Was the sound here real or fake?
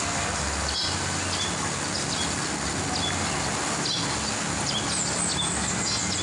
real